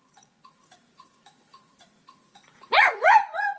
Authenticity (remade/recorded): remade